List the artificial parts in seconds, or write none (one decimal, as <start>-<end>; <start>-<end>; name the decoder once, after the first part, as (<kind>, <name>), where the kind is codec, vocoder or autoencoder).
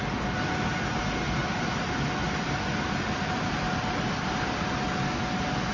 1.4-4.8 (vocoder, BigVGAN v2)